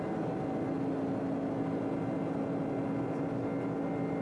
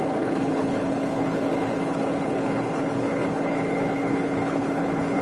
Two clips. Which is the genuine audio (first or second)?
first